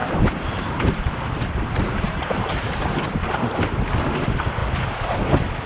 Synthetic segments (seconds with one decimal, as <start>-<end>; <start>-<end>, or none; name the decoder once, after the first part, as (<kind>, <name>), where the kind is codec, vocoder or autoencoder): 0.0-3.4 (vocoder, BigVGAN v2)